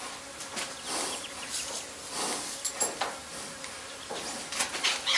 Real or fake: real